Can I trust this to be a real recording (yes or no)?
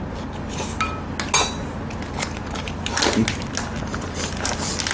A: yes